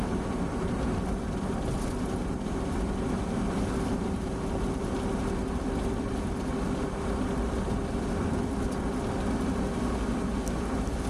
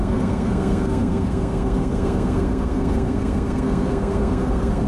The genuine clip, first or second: first